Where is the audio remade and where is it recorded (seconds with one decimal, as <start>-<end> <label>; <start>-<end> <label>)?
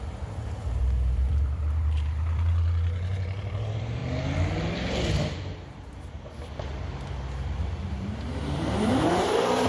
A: 0.0-4.0 remade; 4.0-7.9 recorded; 7.9-9.7 remade